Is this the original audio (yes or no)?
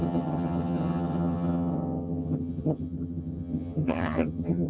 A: no